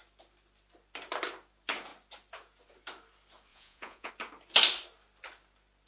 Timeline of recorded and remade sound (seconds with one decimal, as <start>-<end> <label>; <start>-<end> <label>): 0.0-3.5 recorded; 3.5-4.1 remade; 4.1-5.9 recorded